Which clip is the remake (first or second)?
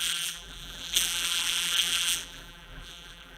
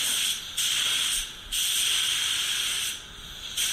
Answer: first